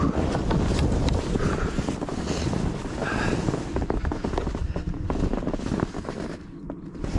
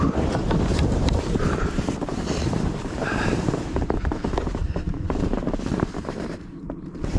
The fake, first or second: second